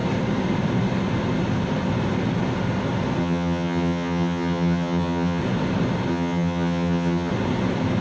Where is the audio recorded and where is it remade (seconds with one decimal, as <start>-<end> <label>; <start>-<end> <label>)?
0.0-3.2 recorded; 3.2-5.4 remade; 5.4-6.1 recorded; 6.1-7.3 remade; 7.3-8.0 recorded